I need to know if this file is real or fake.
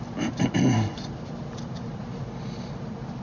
real